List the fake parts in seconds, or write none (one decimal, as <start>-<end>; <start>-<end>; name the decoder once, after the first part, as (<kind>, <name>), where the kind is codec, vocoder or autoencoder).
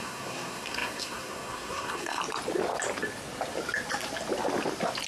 0.0-2.2 (codec, SNAC)